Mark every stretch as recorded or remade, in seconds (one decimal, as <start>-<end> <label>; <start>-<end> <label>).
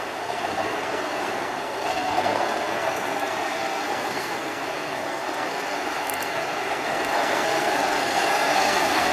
0.0-9.1 remade